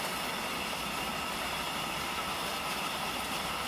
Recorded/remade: recorded